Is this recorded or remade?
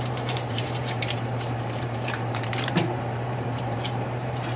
remade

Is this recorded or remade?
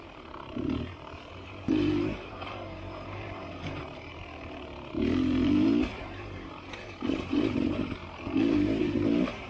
remade